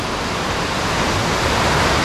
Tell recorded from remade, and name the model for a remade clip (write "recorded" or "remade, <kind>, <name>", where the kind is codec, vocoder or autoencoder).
recorded